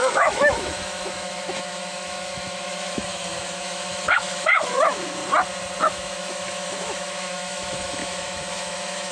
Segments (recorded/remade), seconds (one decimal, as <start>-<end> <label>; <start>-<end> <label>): 0.0-5.2 remade; 5.2-5.8 recorded; 5.8-9.1 remade